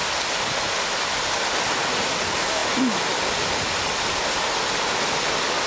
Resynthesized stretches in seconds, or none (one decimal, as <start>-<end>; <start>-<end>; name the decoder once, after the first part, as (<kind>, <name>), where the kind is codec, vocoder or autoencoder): none